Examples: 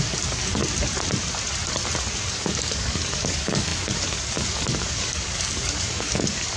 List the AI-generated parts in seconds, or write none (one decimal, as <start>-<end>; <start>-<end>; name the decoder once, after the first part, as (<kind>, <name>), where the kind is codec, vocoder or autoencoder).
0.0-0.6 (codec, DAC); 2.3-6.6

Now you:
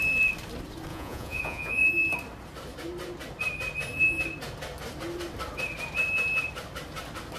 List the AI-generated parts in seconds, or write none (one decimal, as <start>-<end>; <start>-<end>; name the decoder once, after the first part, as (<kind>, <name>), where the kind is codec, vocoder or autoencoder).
0.9-1.9 (vocoder, Vocos)

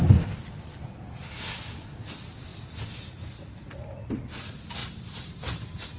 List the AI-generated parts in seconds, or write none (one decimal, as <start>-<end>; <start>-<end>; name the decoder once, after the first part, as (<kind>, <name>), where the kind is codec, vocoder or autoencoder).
2.5-3.8 (vocoder, BigVGAN v2); 4.8-5.4